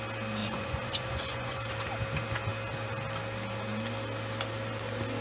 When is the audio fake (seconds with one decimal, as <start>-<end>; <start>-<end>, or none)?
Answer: 0.4-1.7